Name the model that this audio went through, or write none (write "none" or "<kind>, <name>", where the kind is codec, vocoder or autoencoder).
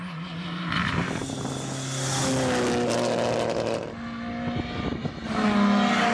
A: none